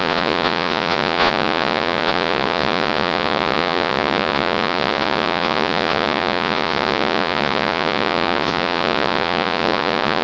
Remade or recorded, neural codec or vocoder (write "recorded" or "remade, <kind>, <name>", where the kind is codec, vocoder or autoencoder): remade, vocoder, Vocos